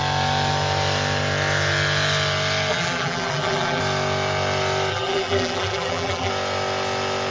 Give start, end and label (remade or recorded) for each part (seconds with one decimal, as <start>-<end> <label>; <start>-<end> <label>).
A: 0.0-2.7 recorded; 2.7-3.8 remade; 3.8-4.9 recorded; 4.9-6.3 remade; 6.3-7.3 recorded